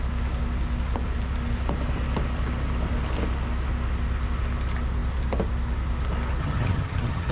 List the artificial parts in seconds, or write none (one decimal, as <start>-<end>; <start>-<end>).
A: 6.4-7.3